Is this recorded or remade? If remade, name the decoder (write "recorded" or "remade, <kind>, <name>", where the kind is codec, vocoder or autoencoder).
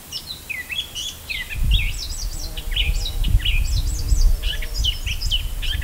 recorded